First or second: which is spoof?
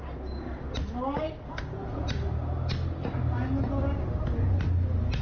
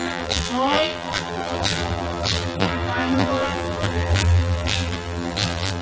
second